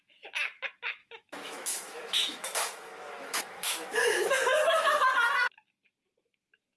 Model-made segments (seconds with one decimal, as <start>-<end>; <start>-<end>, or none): 1.0-5.1